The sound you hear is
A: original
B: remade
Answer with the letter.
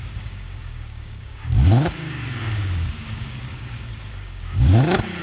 B